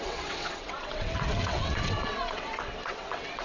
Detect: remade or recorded remade